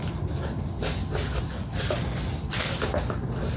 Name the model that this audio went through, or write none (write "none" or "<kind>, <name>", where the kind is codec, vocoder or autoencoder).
none